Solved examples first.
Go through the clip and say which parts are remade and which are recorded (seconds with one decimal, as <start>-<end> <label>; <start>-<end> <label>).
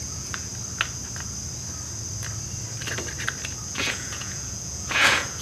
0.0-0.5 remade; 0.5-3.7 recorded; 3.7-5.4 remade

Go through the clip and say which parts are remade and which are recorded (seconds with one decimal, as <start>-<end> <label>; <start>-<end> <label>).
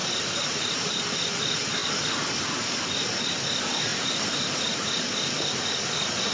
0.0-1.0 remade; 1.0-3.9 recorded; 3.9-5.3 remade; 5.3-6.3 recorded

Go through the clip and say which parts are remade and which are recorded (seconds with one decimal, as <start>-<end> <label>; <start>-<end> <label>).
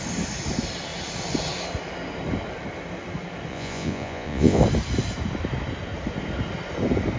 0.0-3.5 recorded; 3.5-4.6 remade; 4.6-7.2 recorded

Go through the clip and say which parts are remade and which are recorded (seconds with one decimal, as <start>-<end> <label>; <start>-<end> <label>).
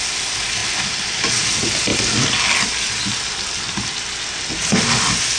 0.0-5.4 recorded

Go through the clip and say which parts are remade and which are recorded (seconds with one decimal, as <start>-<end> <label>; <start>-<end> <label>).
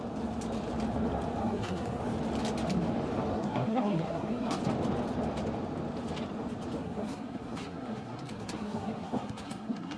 0.0-1.4 recorded; 1.4-2.0 remade; 2.0-3.3 recorded; 3.3-4.6 remade; 4.6-6.8 recorded; 6.8-10.0 remade